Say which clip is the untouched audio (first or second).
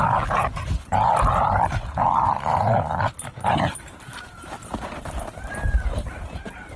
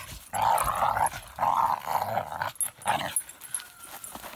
second